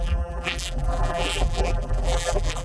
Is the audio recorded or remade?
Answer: remade